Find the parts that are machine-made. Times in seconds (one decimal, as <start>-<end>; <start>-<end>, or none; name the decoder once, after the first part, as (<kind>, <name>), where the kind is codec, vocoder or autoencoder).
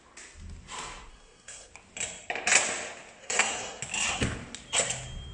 1.1-1.7 (codec, SNAC); 3.2-3.8